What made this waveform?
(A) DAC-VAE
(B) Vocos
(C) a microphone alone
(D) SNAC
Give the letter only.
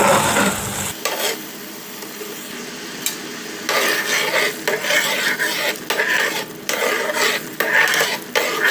C